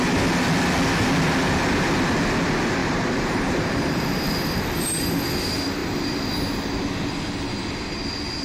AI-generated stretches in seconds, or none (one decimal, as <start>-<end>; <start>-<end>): 2.8-4.2